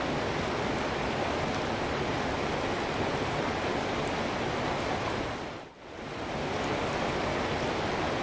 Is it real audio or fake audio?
real